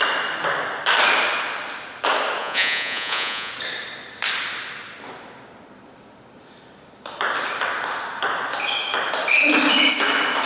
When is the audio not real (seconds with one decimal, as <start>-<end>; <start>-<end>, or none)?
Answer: 2.4-3.5